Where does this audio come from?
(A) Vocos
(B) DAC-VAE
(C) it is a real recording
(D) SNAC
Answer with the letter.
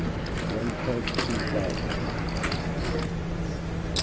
C